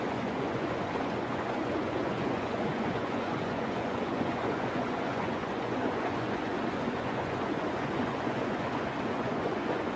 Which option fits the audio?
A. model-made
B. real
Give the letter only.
A